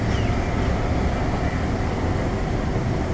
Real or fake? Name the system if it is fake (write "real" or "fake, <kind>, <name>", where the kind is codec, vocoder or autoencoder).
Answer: real